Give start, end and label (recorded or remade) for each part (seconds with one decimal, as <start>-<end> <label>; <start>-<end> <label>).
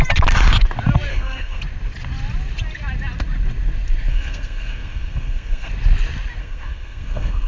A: 0.0-1.1 recorded; 1.1-1.6 remade; 1.6-4.1 recorded; 4.1-5.7 remade; 5.7-6.4 recorded; 6.4-7.5 remade